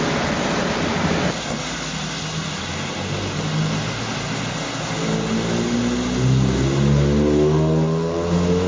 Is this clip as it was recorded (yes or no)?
yes